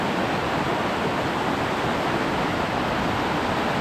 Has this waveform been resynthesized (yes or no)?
no